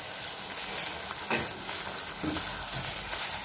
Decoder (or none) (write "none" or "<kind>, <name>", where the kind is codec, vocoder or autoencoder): none